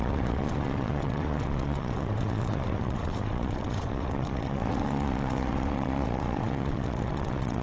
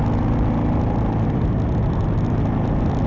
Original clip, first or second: second